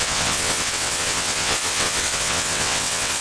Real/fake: fake